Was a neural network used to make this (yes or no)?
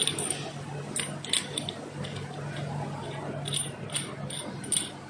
no